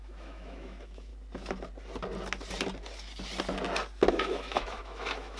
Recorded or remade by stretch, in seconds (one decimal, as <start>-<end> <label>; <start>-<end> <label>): 0.0-1.1 remade; 1.1-4.1 recorded; 4.1-5.4 remade